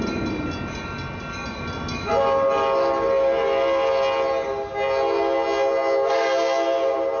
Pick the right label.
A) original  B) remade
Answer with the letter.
A